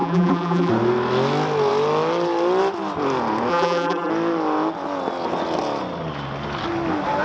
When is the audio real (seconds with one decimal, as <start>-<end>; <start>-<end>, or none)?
0.7-3.5; 4.1-7.2